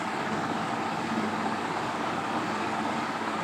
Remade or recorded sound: remade